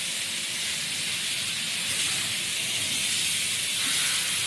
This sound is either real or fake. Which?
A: real